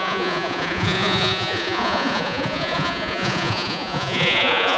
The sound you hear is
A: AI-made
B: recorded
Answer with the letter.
A